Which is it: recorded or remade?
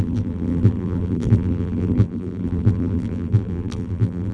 remade